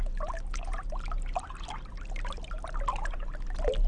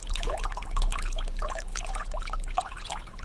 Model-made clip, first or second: second